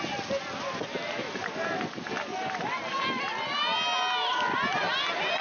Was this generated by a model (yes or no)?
no